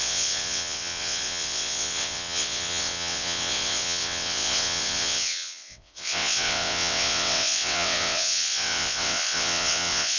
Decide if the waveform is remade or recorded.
remade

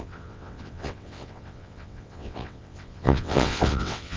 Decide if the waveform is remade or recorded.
remade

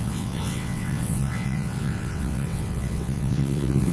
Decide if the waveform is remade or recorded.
remade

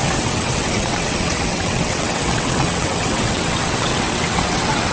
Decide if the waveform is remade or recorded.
remade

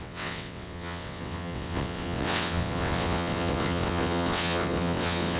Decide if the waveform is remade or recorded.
remade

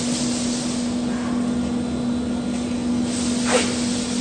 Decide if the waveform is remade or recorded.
recorded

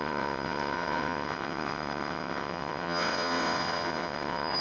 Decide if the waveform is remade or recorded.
remade